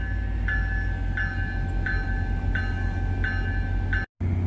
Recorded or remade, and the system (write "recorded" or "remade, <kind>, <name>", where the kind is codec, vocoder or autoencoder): recorded